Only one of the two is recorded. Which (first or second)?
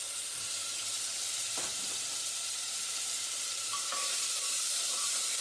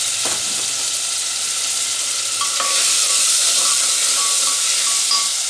second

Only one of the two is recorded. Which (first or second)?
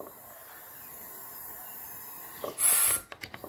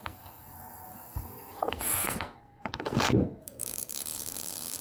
first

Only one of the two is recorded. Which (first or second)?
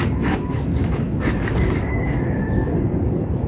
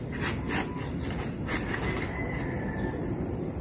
second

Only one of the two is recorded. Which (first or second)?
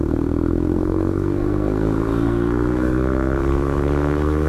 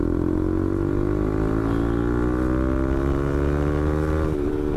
second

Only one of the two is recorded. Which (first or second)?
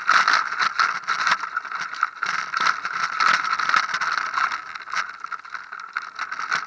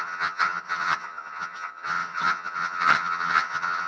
first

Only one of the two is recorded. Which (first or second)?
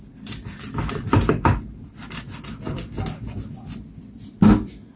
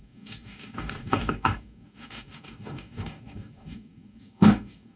first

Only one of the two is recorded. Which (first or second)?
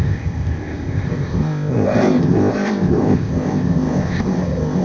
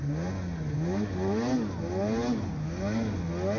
second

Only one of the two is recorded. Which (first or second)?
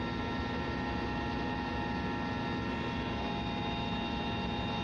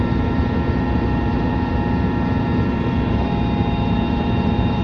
first